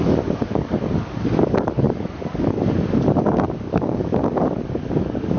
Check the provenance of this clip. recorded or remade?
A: remade